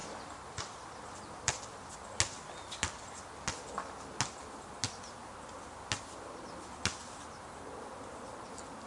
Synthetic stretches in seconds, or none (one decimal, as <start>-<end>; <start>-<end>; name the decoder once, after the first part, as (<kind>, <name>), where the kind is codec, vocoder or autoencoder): 0.0-1.6 (vocoder, BigVGAN v2)